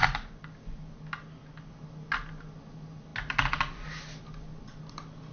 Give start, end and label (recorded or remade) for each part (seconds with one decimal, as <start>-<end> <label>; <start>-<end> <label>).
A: 0.0-5.3 recorded